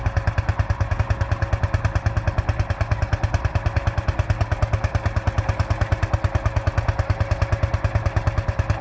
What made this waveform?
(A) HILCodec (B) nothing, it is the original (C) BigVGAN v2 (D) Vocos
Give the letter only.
B